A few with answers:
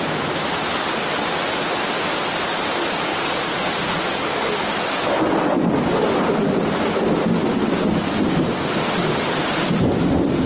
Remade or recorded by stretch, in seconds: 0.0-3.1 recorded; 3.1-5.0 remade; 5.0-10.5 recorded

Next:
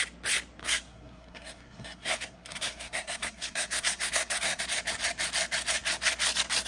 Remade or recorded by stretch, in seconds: 0.0-0.6 recorded; 0.6-4.6 remade; 4.6-6.7 recorded